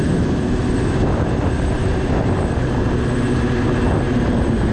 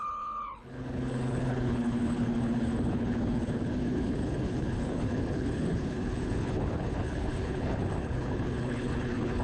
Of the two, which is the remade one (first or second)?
second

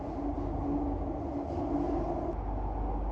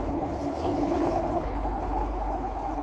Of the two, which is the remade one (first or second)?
second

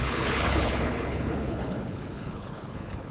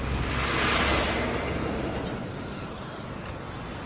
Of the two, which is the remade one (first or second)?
first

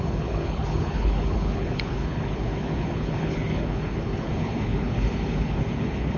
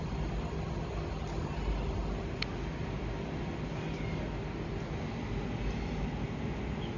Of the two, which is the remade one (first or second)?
first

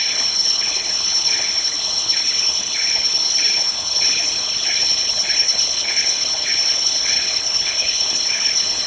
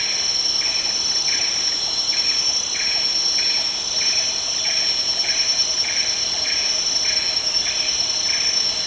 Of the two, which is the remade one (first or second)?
first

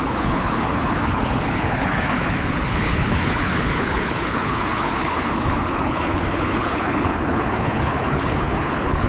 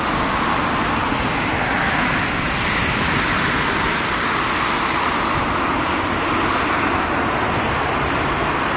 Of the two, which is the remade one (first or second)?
first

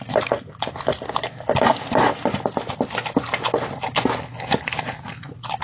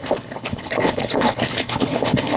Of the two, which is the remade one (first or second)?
second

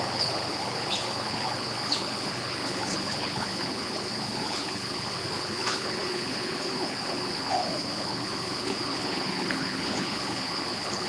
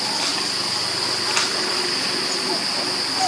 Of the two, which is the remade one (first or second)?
first